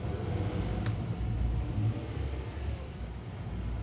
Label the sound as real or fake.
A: real